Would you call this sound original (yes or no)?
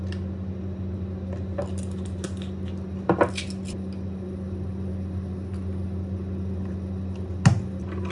yes